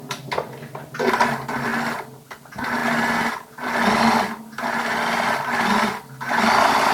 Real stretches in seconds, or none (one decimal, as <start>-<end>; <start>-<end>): 0.0-6.9